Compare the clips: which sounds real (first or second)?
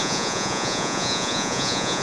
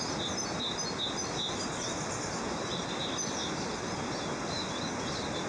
second